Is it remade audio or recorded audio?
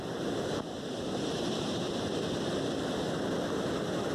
recorded